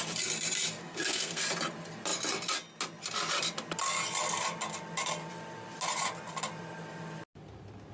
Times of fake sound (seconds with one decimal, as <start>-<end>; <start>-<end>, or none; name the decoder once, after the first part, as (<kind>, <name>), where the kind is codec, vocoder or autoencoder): 0.8-1.4 (codec, SNAC)

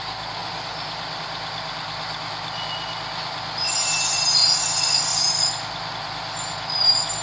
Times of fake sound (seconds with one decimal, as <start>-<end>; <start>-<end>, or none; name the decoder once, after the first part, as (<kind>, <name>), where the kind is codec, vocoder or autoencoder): none

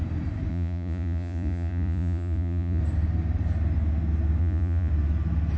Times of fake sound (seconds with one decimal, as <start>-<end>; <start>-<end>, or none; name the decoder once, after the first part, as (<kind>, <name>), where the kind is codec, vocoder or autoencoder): 0.5-2.8 (vocoder, Vocos); 4.4-4.9

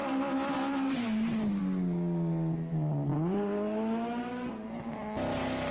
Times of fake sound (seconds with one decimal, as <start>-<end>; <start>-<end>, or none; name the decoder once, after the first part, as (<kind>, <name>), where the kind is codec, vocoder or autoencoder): none

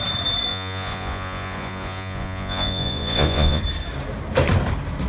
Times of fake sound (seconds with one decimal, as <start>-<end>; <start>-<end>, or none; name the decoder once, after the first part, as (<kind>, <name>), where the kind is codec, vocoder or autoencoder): 0.5-3.6 (vocoder, Vocos)

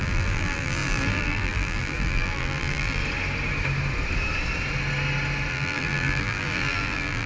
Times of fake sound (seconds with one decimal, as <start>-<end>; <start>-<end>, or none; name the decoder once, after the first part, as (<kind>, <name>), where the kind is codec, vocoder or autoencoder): 0.0-3.0 (vocoder, BigVGAN v2); 5.5-7.3

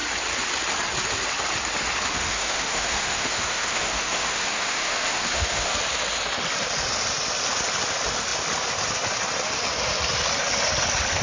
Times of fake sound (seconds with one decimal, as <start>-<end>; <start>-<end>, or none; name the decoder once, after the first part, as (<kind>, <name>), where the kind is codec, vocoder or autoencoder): 2.1-5.7 (autoencoder, DAC-VAE)